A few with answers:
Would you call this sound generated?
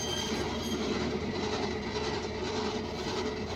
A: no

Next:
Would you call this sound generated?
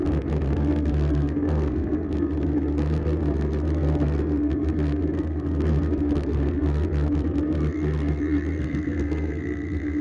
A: yes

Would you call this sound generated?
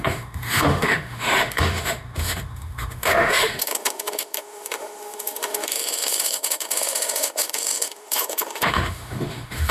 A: yes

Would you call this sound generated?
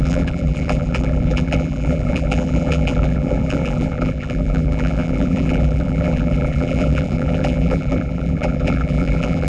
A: yes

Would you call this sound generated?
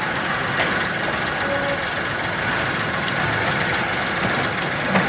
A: no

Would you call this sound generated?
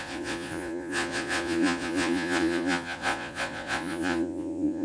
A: yes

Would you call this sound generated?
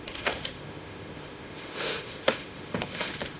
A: yes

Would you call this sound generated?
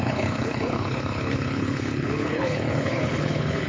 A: yes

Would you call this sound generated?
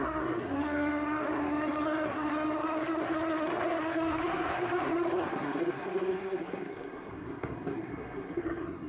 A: yes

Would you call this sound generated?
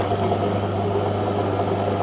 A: no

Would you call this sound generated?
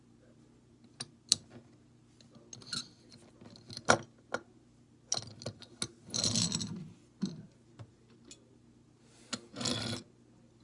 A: no